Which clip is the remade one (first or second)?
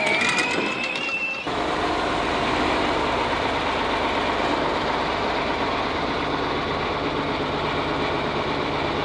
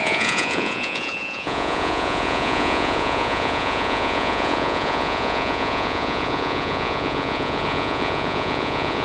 second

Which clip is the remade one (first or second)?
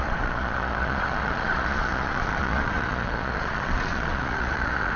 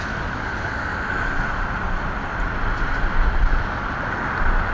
first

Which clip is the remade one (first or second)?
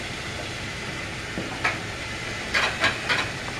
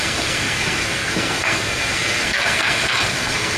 second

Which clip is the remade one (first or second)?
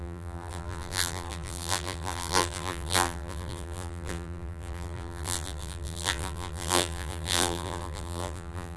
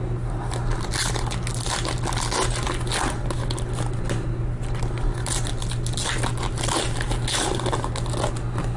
first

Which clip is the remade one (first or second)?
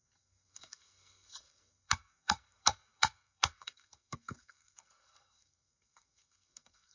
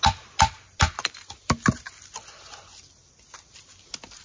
first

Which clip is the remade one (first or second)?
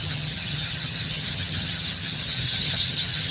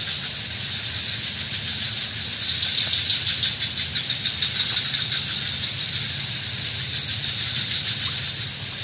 first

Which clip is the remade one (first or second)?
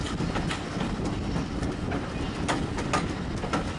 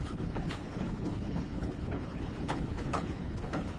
second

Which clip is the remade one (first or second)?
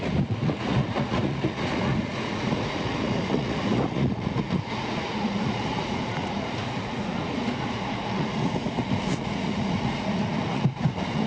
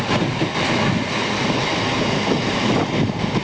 first